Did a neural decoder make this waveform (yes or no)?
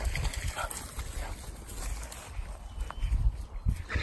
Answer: no